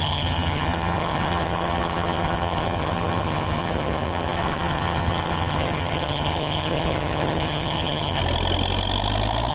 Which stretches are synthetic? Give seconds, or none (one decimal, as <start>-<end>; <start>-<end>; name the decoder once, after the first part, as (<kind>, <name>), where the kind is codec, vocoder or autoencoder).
0.0-8.2 (vocoder, HiFi-GAN)